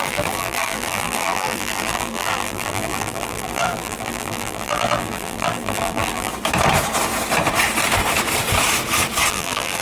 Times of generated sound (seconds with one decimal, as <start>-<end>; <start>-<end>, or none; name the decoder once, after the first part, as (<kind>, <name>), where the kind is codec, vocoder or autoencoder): 0.0-6.3 (vocoder, BigVGAN v2); 9.3-9.8